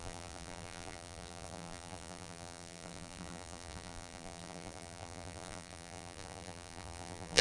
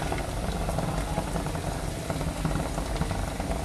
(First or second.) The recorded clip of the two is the second